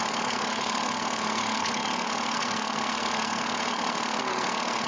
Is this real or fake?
fake